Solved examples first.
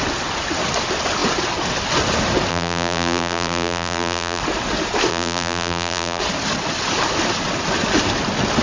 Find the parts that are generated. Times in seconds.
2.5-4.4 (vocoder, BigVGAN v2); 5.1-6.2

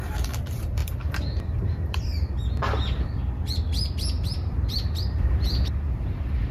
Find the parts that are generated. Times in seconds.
0.0-3.2 (vocoder, BigVGAN v2); 4.0-6.5

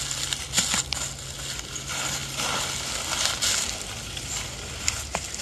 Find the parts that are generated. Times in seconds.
2.2-4.8 (vocoder, BigVGAN v2)

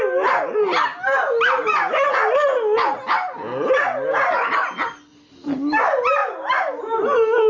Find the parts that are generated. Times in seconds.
6.2-6.8 (vocoder, BigVGAN v2)

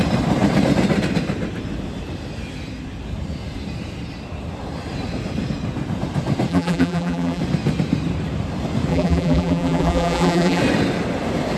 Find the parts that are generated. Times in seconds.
6.5-7.4 (vocoder, BigVGAN v2); 8.9-10.6